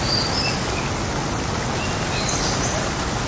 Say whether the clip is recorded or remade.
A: recorded